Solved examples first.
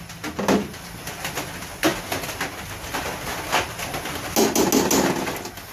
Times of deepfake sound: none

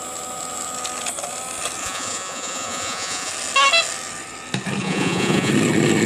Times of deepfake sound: 1.8-3.3 (vocoder, Vocos); 4.8-5.5

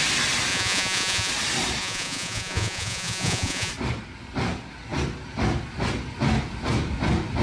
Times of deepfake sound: 0.5-1.3 (vocoder, Vocos); 1.8-3.7

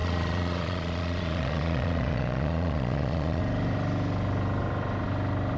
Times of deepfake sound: 0.0-3.4 (vocoder, Vocos)